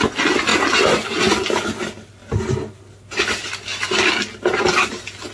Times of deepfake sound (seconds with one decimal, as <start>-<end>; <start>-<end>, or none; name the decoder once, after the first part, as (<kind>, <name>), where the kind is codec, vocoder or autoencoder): none

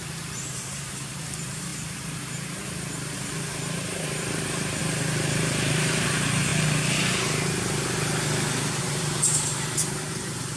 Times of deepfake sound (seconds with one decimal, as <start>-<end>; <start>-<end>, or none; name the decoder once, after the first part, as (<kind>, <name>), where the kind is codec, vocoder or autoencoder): 0.0-6.5 (vocoder, BigVGAN v2); 8.8-10.6

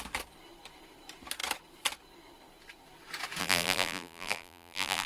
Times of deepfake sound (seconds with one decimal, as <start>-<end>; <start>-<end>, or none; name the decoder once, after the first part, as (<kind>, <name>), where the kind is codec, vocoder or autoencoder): 3.4-5.1 (vocoder, BigVGAN v2)

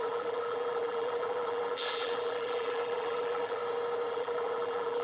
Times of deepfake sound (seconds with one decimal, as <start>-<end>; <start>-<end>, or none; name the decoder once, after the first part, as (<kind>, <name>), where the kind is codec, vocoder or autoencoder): 0.0-3.6 (vocoder, BigVGAN v2); 4.1-5.0